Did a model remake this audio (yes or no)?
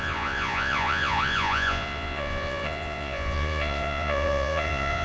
yes